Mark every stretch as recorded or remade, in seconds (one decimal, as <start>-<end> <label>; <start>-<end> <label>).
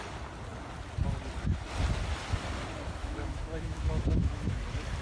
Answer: 0.0-3.0 recorded; 3.0-4.6 remade; 4.6-5.0 recorded